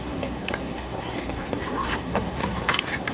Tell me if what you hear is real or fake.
fake